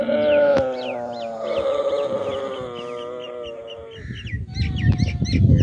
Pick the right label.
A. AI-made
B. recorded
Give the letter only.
B